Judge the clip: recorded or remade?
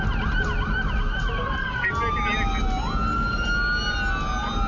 recorded